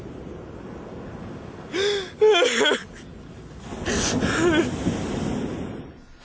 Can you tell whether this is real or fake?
real